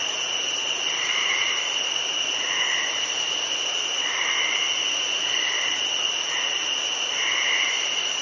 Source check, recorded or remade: recorded